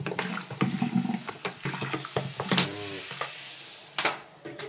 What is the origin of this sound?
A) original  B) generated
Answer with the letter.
A